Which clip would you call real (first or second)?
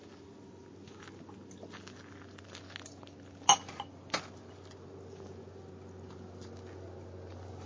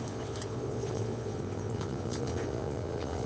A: first